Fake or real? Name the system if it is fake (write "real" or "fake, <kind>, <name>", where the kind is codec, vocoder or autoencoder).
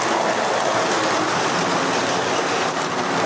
real